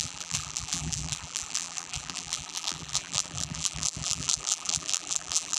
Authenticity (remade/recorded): remade